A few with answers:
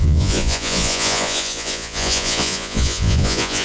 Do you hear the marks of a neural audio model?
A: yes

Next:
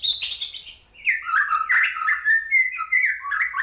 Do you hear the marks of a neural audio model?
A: no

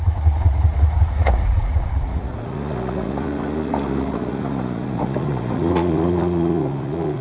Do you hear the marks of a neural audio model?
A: yes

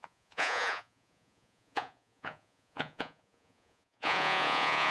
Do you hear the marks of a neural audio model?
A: yes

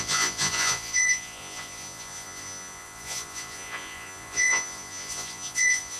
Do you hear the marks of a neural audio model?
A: yes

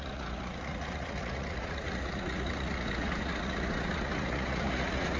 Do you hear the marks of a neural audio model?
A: yes